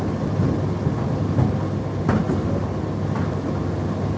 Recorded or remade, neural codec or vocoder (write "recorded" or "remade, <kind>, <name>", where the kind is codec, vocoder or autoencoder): recorded